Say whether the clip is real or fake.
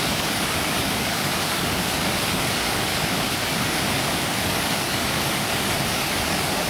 fake